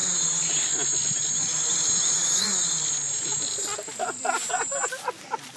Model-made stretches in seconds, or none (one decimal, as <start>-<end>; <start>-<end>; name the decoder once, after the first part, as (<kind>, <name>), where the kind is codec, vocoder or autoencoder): none